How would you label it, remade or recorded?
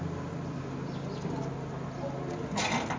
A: recorded